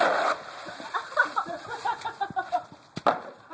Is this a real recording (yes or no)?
yes